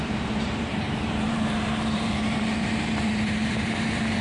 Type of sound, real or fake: fake